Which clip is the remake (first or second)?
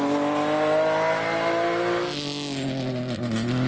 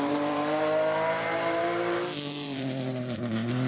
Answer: second